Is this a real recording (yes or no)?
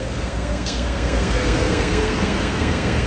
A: no